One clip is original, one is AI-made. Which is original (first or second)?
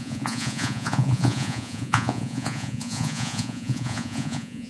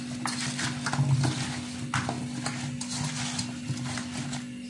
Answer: second